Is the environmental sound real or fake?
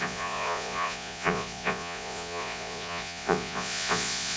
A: fake